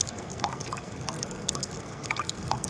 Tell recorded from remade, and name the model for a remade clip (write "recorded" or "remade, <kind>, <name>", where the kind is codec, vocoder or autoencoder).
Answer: remade, codec, SNAC